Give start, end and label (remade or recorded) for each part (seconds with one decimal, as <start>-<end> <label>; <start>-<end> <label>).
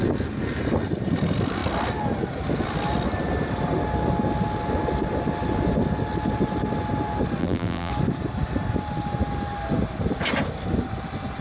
0.0-7.4 recorded; 7.4-7.9 remade; 7.9-11.4 recorded